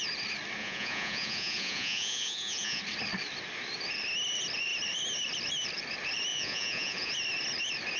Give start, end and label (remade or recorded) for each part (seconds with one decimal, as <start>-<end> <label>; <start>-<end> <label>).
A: 0.0-0.6 recorded; 0.6-2.8 remade; 2.8-6.3 recorded; 6.3-7.1 remade; 7.1-8.0 recorded